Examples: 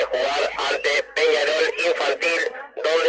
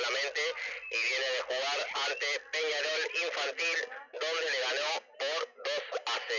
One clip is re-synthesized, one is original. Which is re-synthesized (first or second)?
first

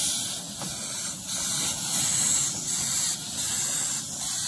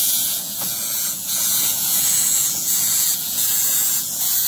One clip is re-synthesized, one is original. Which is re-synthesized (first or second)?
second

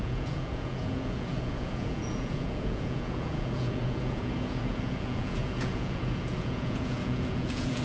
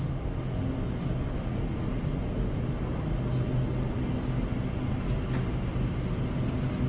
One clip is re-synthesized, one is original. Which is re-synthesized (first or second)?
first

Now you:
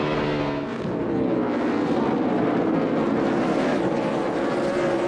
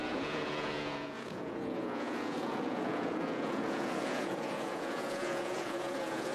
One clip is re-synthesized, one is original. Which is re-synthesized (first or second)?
second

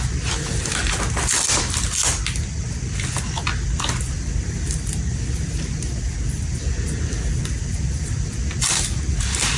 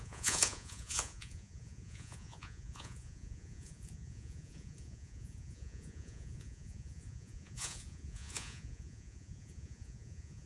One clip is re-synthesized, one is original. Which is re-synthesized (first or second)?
second